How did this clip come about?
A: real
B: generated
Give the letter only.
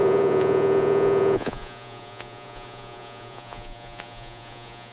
B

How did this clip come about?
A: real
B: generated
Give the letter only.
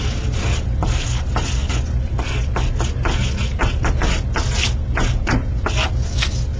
A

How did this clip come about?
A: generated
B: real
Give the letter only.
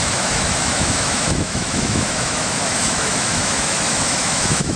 A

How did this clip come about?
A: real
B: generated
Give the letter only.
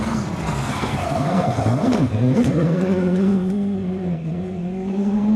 B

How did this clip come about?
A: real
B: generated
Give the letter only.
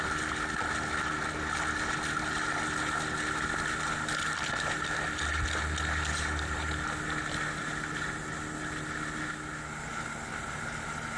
A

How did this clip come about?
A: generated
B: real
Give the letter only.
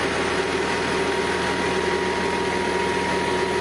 B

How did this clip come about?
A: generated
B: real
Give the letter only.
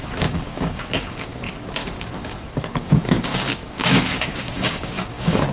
A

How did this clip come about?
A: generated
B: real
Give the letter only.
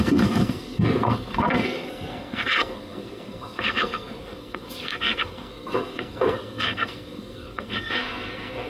A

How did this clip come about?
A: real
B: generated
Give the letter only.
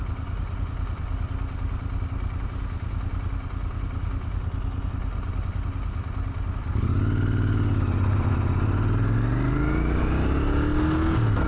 A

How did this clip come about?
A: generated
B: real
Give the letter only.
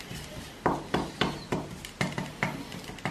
B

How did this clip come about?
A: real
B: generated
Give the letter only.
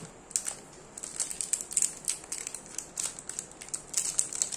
A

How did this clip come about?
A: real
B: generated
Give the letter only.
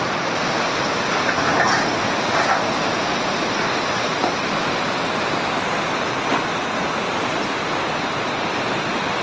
A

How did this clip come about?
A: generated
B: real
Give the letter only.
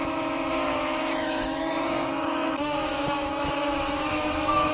A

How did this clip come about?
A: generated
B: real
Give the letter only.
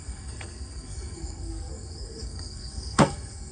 A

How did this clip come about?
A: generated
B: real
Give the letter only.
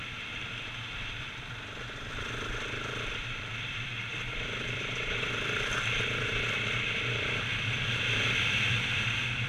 A